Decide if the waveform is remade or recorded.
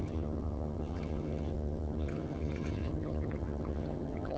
remade